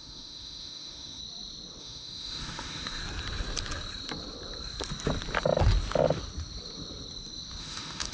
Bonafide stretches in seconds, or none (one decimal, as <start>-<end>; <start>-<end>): 1.2-1.8; 3.0-7.6